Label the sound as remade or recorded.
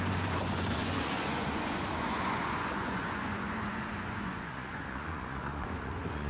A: remade